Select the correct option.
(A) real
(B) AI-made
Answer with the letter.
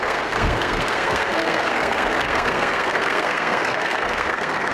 B